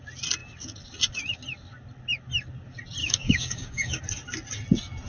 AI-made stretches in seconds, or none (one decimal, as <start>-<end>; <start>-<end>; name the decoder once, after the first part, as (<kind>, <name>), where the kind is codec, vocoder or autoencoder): 3.0-4.0 (codec, DAC)